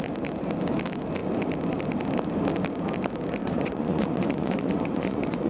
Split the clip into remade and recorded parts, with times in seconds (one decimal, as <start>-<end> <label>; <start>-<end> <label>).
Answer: 0.0-3.4 recorded; 3.4-5.5 remade